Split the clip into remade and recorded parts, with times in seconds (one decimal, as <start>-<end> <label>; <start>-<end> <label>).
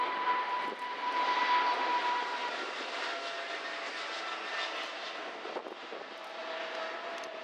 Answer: 0.0-7.4 recorded